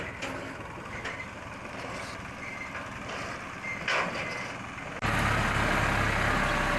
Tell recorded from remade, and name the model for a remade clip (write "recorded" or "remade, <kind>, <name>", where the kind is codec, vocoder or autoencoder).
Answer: recorded